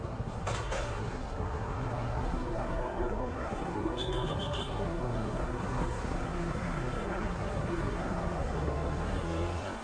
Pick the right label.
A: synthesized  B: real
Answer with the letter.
A